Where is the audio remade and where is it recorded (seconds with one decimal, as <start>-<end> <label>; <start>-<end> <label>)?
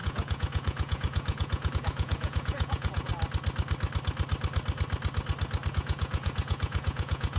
0.0-3.1 remade; 3.1-5.7 recorded; 5.7-7.4 remade